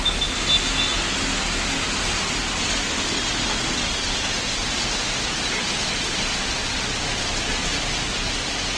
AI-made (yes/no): no